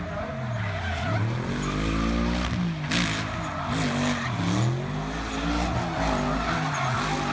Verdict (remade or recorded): recorded